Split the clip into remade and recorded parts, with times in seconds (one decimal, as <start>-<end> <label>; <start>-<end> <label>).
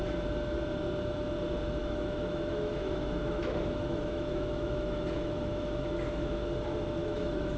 0.0-1.8 recorded; 1.8-6.4 remade; 6.4-7.0 recorded; 7.0-7.6 remade